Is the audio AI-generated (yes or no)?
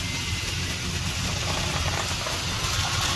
no